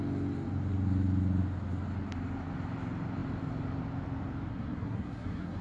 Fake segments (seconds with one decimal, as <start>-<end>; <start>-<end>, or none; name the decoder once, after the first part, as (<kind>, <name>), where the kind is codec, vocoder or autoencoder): 4.5-5.6 (codec, SNAC)